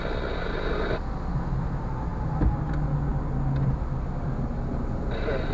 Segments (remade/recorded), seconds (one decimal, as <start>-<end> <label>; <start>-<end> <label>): 0.0-5.5 recorded